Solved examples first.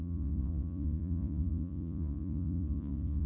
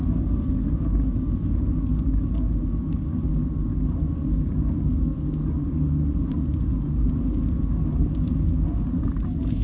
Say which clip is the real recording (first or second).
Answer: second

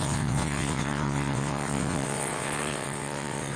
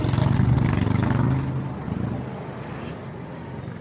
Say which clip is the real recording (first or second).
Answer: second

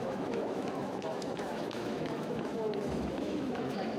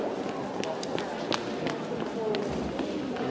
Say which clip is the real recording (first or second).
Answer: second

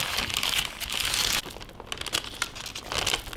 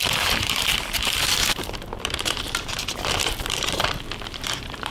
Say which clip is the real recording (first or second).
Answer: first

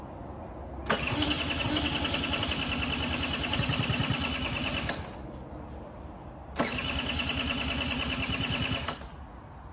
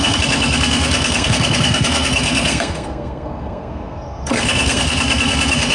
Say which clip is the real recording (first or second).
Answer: first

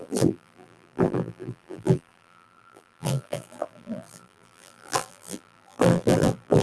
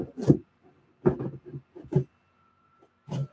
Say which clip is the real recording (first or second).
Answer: second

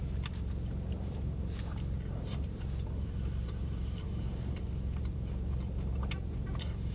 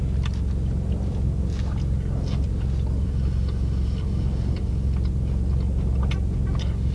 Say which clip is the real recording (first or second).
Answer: second